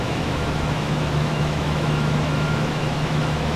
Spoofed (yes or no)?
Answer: yes